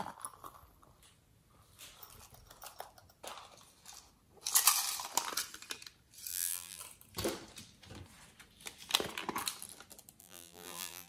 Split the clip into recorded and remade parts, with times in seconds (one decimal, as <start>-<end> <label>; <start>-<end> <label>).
0.0-6.3 recorded; 6.3-6.8 remade; 6.8-10.2 recorded; 10.2-11.1 remade